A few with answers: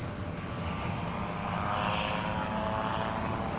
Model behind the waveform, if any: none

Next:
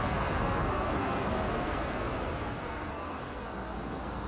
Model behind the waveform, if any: codec, SNAC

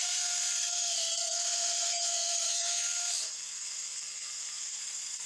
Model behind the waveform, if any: codec, SNAC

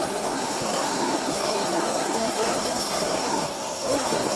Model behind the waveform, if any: codec, SNAC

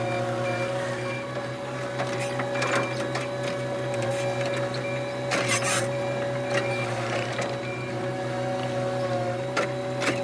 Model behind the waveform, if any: none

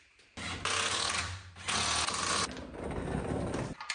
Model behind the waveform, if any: none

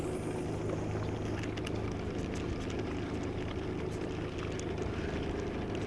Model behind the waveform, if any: none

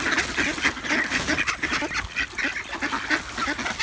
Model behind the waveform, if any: none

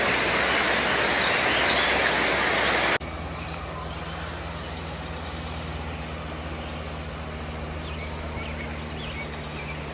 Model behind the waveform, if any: none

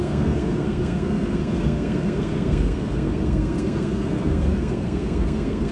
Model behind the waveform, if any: codec, SNAC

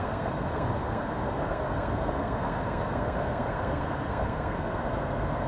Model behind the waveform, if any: codec, SNAC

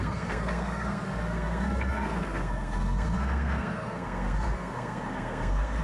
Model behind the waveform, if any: codec, SNAC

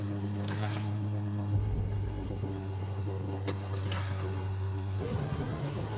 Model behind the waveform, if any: codec, SNAC